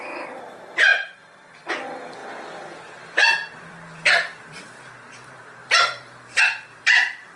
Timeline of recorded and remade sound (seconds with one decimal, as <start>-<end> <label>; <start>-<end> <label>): 0.0-7.4 remade